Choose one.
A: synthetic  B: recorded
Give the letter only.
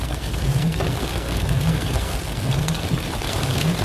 A